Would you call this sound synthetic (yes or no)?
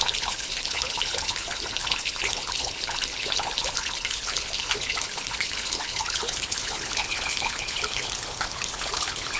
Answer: yes